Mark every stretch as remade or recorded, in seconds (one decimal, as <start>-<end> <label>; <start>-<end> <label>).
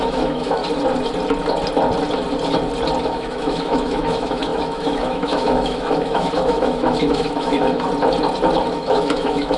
0.0-0.6 remade; 0.6-3.0 recorded; 3.0-7.9 remade; 7.9-8.7 recorded; 8.7-9.6 remade